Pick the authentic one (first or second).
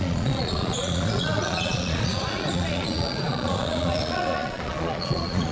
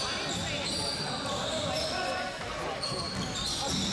second